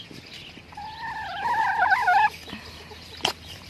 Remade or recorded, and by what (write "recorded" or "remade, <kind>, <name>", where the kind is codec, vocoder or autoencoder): recorded